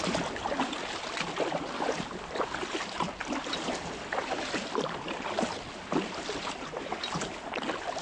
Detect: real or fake real